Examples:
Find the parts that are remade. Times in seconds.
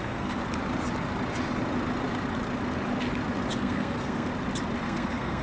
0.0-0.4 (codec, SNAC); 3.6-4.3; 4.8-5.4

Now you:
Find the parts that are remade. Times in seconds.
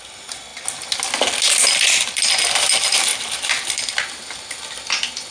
0.0-0.5 (vocoder, BigVGAN v2); 2.6-3.1